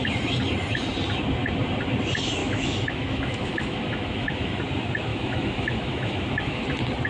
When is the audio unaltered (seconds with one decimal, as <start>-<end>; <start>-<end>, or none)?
0.0-2.4; 4.6-5.1; 6.6-7.1